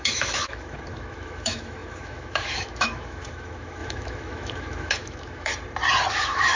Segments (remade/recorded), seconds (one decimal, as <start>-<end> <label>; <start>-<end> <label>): 0.0-5.5 remade; 5.5-6.1 recorded; 6.1-6.6 remade